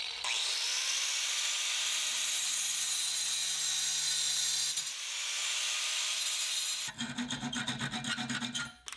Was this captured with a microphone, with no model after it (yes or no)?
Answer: yes